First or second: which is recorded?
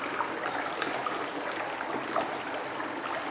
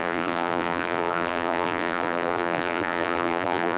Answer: first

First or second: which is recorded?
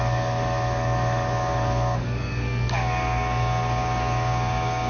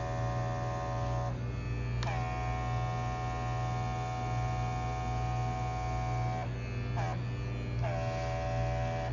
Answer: second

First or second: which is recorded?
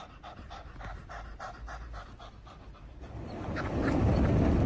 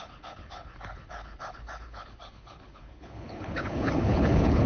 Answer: first